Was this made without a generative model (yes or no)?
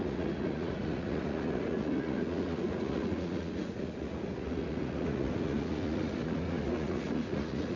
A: no